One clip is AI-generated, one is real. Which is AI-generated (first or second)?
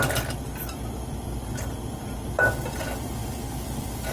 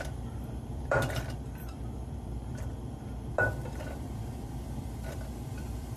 second